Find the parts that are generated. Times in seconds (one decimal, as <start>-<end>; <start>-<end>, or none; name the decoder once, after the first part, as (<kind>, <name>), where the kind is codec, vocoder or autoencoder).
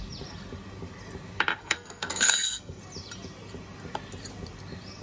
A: 1.6-2.8 (codec, SNAC)